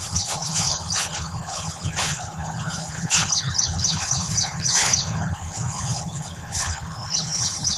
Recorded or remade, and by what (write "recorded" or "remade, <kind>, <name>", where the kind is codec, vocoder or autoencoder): remade, codec, HILCodec